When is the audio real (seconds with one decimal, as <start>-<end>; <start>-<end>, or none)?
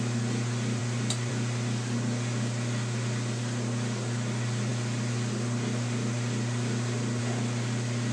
0.0-8.1